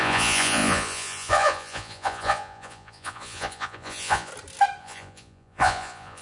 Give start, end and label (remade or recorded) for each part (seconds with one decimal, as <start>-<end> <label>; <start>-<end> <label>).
0.0-4.3 remade; 4.3-4.8 recorded; 4.8-6.2 remade